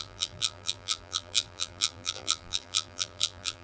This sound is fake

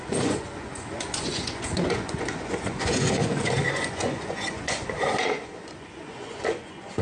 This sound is fake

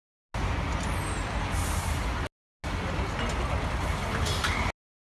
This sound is real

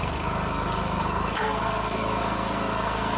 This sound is fake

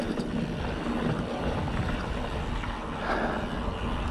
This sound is real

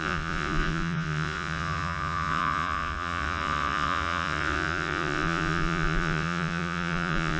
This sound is fake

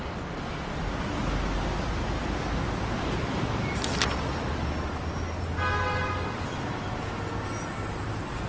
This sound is real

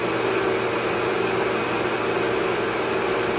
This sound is real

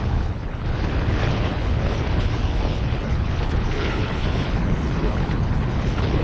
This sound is fake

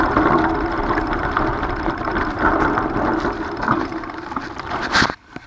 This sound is real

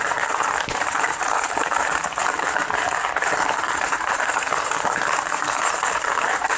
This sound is fake